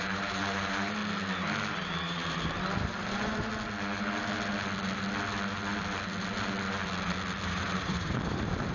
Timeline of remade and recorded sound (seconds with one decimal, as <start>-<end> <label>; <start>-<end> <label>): 0.0-1.0 remade; 1.0-1.7 recorded; 1.7-3.5 remade; 3.5-7.4 recorded; 7.4-8.7 remade

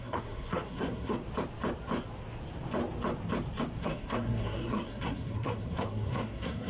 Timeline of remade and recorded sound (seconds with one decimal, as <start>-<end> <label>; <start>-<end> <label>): 0.0-1.2 remade; 1.2-3.8 recorded; 3.8-6.7 remade

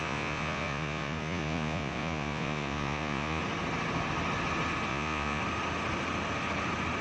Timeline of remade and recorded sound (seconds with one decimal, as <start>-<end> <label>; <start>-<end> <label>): 0.0-3.4 remade; 3.4-4.9 recorded; 4.9-5.4 remade; 5.4-7.0 recorded

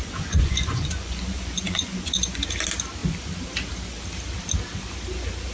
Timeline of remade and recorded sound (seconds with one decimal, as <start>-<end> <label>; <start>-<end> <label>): 0.0-2.4 remade; 2.4-5.5 recorded

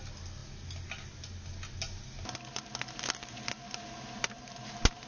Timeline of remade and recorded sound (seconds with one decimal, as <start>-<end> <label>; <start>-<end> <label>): 0.0-5.1 recorded

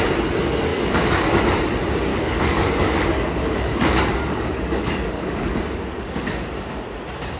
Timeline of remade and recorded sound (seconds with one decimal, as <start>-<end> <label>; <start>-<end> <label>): 0.0-0.7 recorded; 0.7-1.4 remade; 1.4-2.1 recorded; 2.1-6.2 remade; 6.2-7.4 recorded

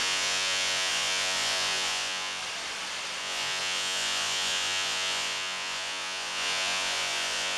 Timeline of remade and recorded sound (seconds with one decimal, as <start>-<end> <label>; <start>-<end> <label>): 0.0-2.4 remade; 2.4-3.2 recorded; 3.2-7.6 remade

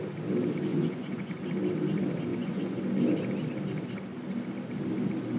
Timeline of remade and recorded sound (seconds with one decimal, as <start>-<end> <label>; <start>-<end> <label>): 0.0-0.7 recorded; 0.7-1.3 remade; 1.3-2.3 recorded; 2.3-2.8 remade; 2.8-5.4 recorded